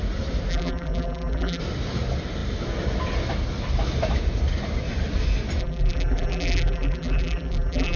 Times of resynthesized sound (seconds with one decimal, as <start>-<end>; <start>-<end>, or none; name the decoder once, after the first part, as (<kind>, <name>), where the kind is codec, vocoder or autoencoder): 0.5-1.6 (vocoder, BigVGAN v2); 5.6-8.0